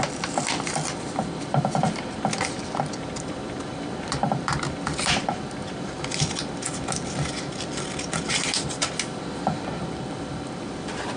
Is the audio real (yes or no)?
no